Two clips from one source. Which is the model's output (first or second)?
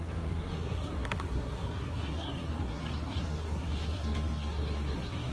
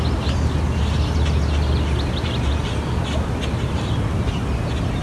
first